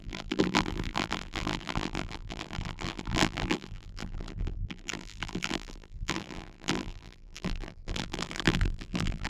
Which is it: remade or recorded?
remade